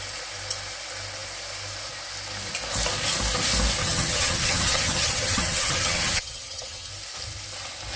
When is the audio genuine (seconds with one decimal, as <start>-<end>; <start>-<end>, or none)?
0.0-3.8; 6.9-8.0